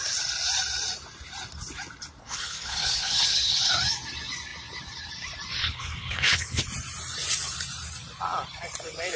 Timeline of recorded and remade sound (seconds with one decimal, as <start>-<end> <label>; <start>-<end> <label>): 0.0-2.2 recorded; 2.2-3.7 remade; 3.7-5.6 recorded; 5.6-6.6 remade; 6.6-9.2 recorded